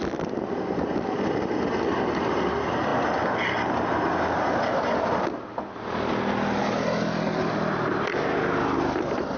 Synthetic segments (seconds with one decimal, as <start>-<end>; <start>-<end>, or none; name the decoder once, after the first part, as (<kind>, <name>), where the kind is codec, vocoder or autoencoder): none